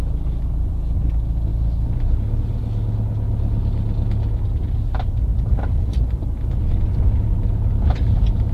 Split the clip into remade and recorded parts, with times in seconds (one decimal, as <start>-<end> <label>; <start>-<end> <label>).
0.0-5.3 recorded; 5.3-7.2 remade; 7.2-8.5 recorded